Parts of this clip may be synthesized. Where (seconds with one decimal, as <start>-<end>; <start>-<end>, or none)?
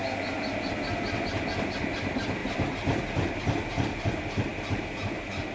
1.8-5.5